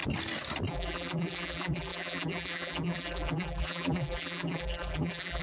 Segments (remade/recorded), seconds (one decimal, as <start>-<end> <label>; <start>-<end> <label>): 0.0-0.7 recorded; 0.7-5.4 remade

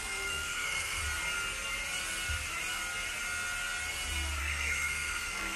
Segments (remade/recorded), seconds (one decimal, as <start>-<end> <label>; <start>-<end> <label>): 0.0-1.0 remade; 1.0-4.4 recorded; 4.4-5.6 remade

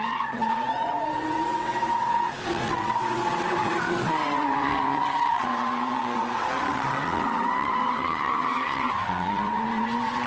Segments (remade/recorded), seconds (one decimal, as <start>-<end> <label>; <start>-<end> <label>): 0.0-10.3 remade